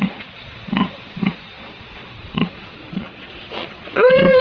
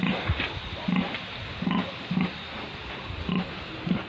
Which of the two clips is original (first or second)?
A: second